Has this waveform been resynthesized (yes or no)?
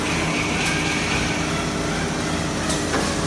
no